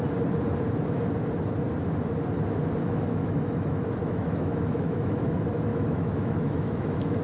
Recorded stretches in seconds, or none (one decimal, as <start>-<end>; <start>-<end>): 0.0-2.8; 5.3-5.7